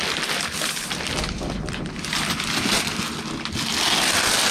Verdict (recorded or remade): recorded